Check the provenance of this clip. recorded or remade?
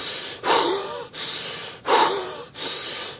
remade